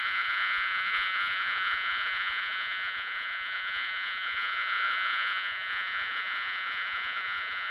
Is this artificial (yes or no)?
yes